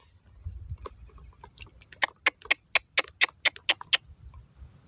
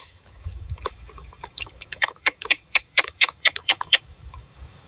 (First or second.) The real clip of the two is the first